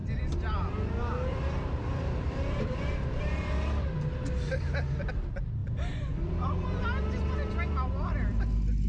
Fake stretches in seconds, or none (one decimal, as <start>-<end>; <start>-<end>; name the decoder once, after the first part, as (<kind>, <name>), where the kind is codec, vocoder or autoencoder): 0.0-5.1 (vocoder, BigVGAN v2); 5.6-6.8